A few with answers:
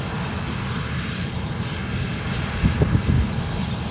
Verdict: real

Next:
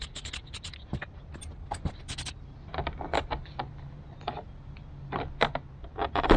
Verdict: real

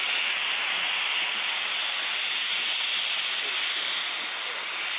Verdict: real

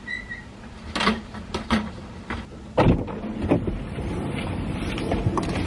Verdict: real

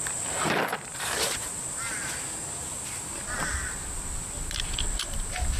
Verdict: real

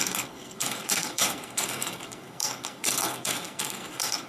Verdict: fake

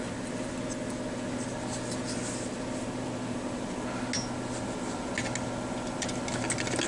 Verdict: real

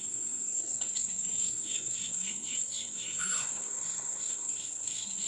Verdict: fake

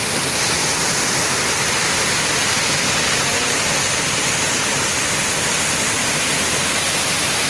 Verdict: real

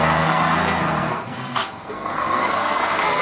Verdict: fake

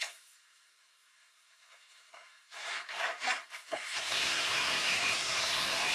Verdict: fake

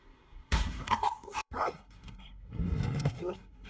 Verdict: fake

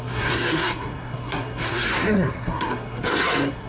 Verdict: fake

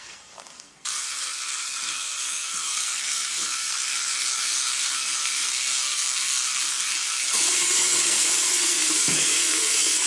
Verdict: fake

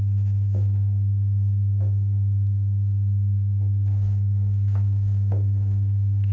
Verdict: fake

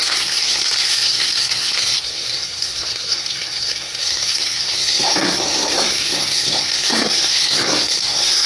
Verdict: fake